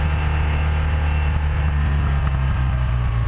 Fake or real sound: real